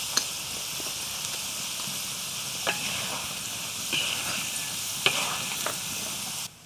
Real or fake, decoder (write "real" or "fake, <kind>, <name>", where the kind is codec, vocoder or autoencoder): real